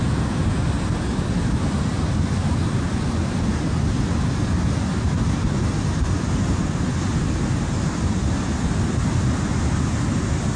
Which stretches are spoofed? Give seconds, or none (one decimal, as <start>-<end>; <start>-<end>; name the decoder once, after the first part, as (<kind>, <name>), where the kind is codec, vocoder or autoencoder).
1.9-2.9 (vocoder, BigVGAN v2); 3.5-6.5